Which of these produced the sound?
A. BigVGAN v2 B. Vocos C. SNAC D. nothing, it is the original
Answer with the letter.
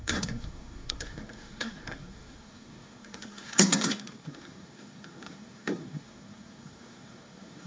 C